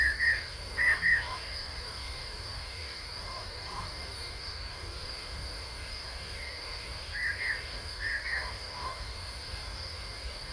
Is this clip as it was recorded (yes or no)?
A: no